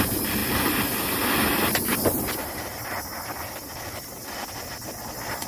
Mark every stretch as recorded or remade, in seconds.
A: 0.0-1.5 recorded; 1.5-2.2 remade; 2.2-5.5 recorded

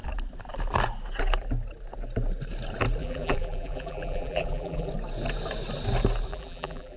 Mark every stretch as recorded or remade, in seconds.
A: 0.0-3.0 recorded; 3.0-4.9 remade; 4.9-6.3 recorded; 6.3-7.0 remade